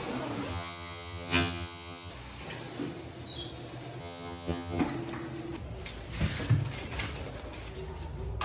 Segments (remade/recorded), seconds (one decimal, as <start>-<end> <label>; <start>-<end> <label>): 0.0-0.5 recorded; 0.5-2.1 remade; 2.1-4.0 recorded; 4.0-4.8 remade; 4.8-8.4 recorded